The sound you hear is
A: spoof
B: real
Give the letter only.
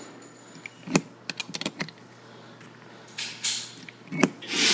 B